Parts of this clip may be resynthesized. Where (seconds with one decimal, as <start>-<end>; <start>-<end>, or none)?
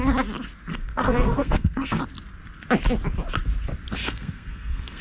0.7-2.0; 4.0-5.0